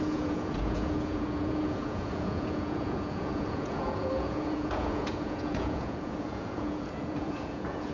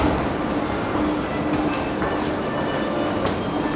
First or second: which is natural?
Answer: second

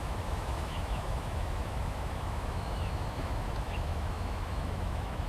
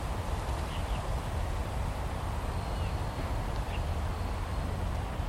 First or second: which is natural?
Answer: second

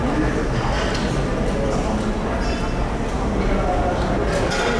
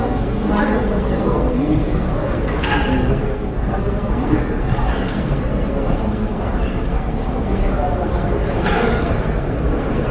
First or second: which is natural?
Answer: first